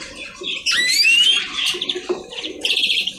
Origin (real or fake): fake